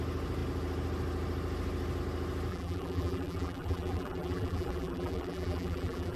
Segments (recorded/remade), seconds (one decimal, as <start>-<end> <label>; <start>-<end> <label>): 0.0-2.5 recorded; 2.5-6.2 remade